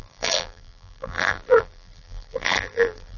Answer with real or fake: fake